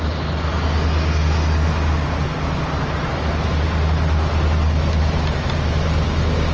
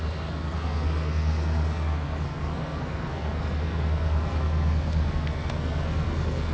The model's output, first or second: second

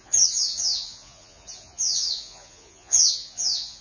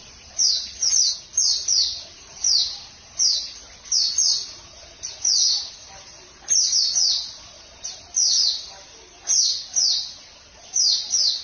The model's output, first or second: first